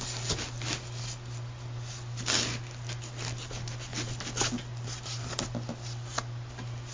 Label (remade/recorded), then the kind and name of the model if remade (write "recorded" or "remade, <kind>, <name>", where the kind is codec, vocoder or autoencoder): recorded